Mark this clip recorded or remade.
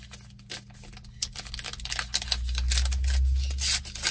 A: recorded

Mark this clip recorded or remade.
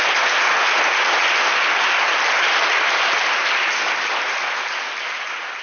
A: recorded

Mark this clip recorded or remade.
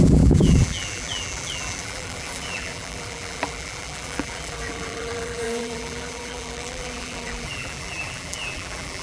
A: remade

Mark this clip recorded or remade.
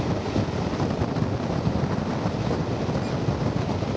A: recorded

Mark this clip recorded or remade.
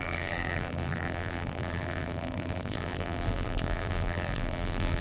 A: remade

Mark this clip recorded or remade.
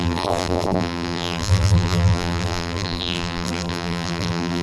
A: remade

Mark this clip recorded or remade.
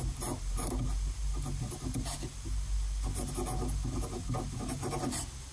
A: recorded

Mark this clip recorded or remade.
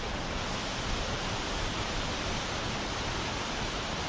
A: remade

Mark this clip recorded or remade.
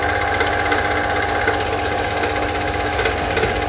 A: recorded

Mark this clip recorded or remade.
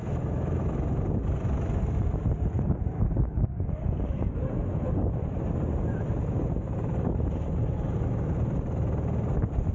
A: recorded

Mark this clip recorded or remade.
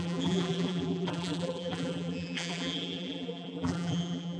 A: remade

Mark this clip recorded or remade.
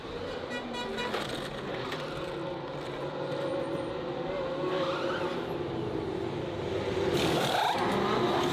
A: recorded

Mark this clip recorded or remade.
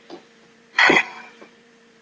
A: remade